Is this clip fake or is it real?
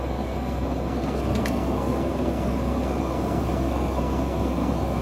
fake